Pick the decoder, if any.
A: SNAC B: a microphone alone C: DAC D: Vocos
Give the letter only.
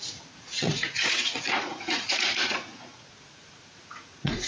D